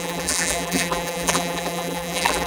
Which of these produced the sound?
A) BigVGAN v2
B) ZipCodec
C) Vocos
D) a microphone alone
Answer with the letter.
A